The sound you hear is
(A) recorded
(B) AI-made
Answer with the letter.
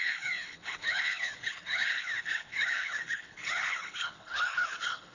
B